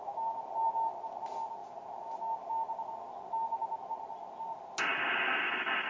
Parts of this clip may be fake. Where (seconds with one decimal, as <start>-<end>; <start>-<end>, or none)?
none